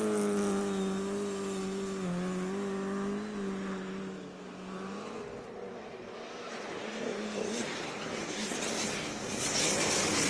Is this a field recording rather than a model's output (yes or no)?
yes